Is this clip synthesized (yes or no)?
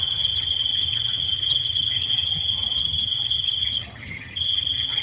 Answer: yes